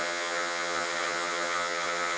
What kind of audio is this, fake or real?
fake